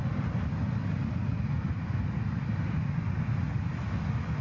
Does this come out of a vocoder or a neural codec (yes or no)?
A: no